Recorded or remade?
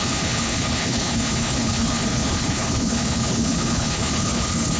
remade